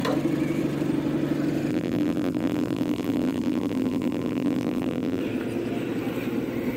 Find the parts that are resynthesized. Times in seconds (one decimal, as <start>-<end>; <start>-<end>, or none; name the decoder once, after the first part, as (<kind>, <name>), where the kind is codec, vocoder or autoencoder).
1.7-5.2 (vocoder, BigVGAN v2)